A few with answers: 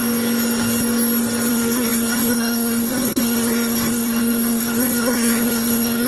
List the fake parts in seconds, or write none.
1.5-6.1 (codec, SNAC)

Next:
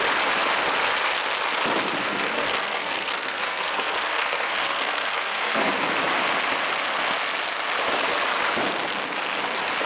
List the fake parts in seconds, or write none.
2.0-5.7 (codec, SNAC)

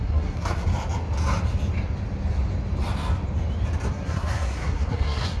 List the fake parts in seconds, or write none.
0.0-0.7 (codec, SNAC); 3.9-5.4

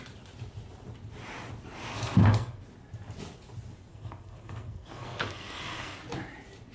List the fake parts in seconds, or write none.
1.9-2.6 (codec, SNAC); 3.9-6.0